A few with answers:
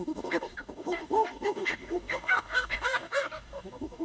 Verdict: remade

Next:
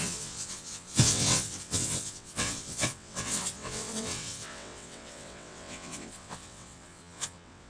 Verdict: remade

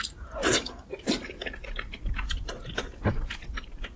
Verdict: remade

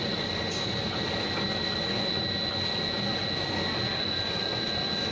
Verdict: recorded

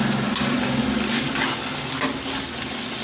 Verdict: recorded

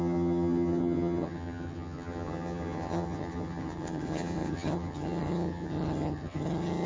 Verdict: remade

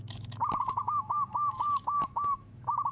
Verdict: remade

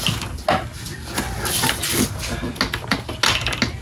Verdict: recorded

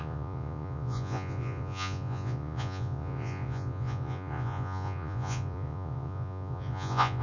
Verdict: remade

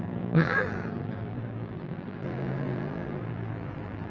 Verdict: remade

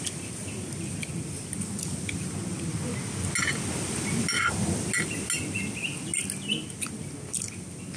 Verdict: recorded